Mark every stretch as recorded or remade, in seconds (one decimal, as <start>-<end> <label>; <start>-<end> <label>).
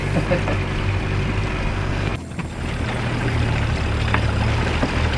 0.0-1.7 recorded; 1.7-2.1 remade; 2.1-5.2 recorded